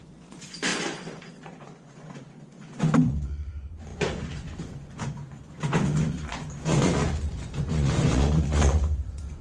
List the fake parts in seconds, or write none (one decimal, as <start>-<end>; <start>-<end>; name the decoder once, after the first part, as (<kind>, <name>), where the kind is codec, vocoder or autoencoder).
0.0-9.4 (vocoder, Vocos)